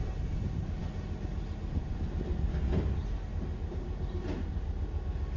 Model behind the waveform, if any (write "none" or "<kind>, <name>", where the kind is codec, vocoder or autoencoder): none